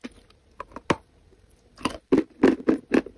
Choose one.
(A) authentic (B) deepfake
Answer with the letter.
A